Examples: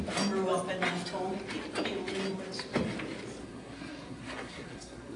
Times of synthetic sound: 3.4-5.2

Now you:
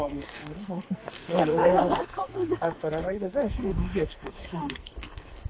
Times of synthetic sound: 0.0-5.5